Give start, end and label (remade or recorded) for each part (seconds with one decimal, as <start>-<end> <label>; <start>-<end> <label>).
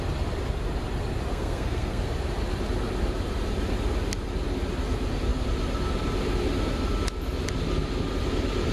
0.0-1.3 recorded; 1.3-2.1 remade; 2.1-8.7 recorded